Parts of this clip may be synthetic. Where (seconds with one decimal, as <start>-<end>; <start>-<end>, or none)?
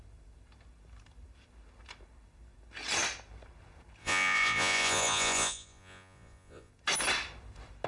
4.0-6.7